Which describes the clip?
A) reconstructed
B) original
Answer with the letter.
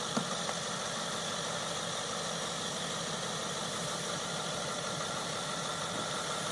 B